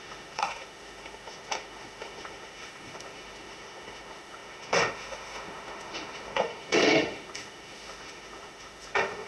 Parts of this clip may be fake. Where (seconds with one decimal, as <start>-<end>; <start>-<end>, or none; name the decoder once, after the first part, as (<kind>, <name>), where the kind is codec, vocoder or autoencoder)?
0.0-9.3 (autoencoder, DAC-VAE)